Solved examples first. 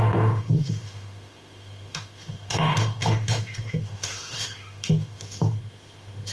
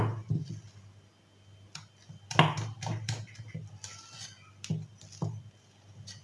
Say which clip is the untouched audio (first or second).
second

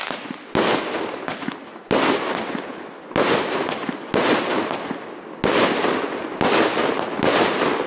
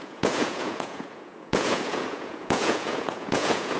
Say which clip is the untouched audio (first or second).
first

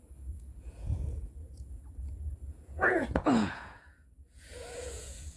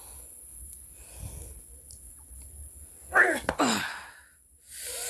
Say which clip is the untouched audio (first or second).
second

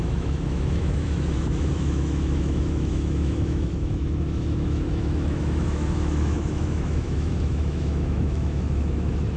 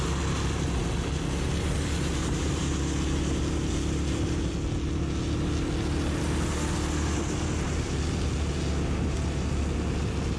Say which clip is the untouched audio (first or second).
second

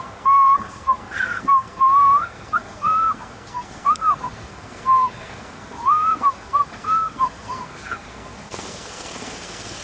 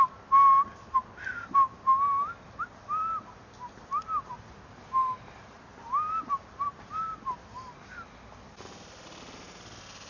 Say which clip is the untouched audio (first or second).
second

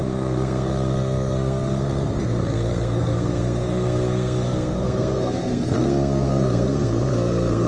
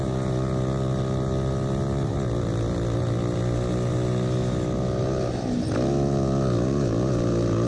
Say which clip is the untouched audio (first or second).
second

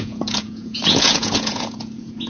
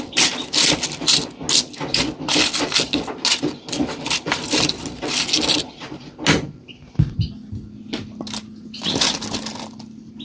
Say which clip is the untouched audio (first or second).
second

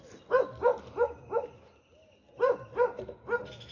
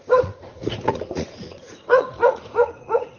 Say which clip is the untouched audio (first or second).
first